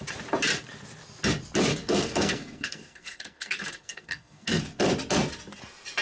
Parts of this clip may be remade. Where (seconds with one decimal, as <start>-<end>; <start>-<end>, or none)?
1.7-4.8